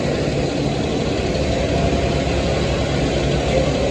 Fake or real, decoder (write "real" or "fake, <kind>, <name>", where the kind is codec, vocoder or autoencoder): real